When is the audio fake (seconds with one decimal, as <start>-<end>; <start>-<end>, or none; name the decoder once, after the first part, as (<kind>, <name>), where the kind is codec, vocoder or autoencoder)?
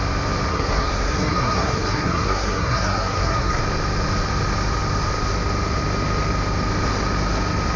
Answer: 0.5-3.6 (codec, SNAC)